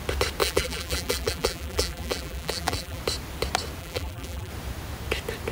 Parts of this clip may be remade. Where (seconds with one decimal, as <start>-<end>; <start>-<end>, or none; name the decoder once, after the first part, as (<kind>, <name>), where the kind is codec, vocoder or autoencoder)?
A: 0.4-3.0 (vocoder, BigVGAN v2); 3.8-4.5